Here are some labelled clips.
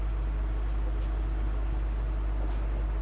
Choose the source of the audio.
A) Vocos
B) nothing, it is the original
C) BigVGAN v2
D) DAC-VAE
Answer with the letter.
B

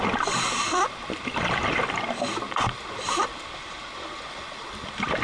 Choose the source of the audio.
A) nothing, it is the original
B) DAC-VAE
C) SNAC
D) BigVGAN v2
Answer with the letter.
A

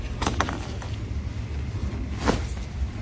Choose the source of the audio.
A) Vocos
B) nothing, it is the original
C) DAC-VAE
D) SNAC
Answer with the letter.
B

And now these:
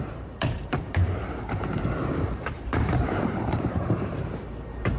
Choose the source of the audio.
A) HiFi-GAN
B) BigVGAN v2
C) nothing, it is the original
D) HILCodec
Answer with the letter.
B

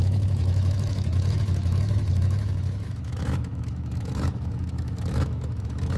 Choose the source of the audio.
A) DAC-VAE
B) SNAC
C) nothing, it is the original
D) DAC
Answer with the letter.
A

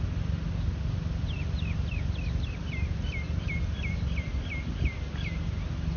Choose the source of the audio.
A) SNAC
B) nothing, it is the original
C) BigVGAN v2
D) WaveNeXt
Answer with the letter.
B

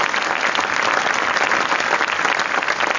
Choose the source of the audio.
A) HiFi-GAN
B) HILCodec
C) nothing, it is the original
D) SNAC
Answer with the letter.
C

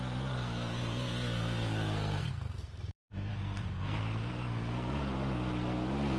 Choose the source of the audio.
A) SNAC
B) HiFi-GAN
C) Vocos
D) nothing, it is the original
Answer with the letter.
A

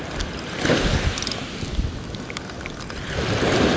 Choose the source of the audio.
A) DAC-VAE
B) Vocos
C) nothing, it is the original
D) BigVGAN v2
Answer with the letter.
C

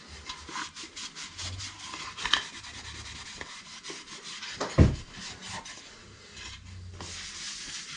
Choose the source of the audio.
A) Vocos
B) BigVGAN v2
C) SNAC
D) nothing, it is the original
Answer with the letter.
D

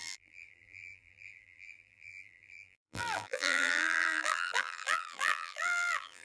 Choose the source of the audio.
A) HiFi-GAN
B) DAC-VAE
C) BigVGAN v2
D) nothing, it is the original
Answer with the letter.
C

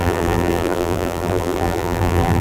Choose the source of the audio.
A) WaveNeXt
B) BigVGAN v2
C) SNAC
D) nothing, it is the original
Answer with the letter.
B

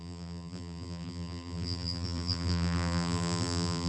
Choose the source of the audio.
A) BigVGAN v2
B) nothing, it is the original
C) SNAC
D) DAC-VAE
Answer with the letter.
A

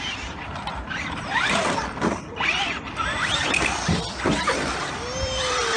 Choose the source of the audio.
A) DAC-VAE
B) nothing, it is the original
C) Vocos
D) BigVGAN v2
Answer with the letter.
D